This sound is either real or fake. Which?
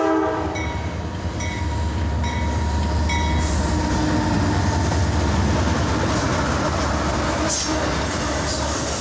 real